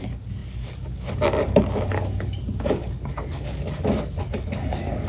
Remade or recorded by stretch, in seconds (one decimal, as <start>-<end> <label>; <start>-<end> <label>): 0.0-5.1 remade